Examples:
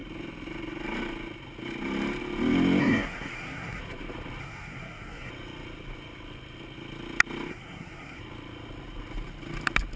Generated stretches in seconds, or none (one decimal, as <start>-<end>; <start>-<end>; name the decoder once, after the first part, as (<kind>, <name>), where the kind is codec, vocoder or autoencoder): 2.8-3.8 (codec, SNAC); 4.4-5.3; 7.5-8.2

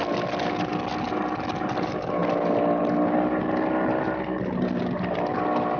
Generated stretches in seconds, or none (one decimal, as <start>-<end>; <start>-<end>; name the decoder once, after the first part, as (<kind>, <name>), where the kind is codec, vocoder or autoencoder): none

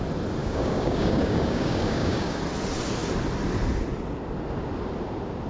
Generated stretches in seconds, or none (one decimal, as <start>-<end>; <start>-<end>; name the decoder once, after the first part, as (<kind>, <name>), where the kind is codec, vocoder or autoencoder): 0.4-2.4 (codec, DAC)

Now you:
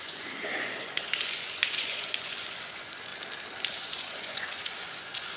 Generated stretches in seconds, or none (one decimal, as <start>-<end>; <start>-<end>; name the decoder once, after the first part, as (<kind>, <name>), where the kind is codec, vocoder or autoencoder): 0.0-3.1 (vocoder, Vocos); 3.8-5.4

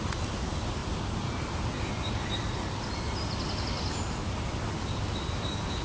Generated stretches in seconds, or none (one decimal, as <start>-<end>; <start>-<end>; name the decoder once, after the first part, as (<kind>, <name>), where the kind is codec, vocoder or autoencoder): none